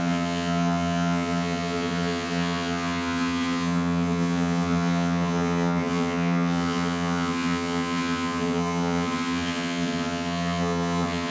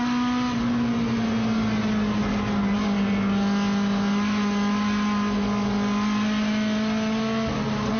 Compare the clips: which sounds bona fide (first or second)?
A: second